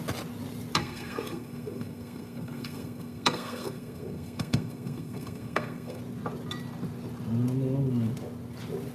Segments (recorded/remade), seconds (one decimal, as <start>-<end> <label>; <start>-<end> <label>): 0.0-0.8 recorded; 0.8-6.0 remade; 6.0-8.9 recorded